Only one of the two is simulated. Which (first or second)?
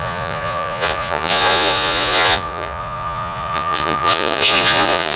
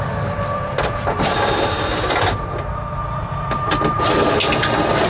first